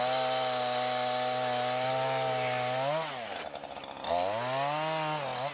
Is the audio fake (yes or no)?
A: no